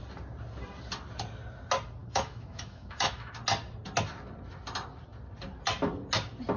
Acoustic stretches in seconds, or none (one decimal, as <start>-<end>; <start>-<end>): 0.0-2.0; 3.3-6.6